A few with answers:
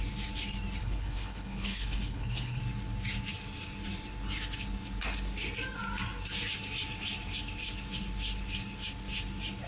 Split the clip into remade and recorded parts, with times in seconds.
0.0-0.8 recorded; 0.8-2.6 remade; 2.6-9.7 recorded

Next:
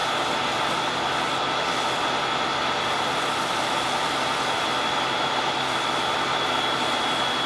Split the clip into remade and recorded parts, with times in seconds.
0.0-7.5 recorded